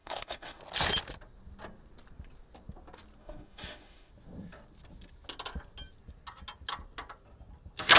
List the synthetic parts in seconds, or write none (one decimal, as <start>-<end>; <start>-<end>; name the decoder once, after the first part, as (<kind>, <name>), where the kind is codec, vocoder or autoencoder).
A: 0.0-0.6 (autoencoder, DAC-VAE); 3.2-4.1